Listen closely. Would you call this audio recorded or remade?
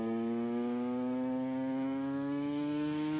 remade